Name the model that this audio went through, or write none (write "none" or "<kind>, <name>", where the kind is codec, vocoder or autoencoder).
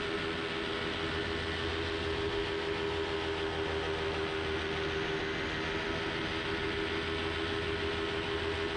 none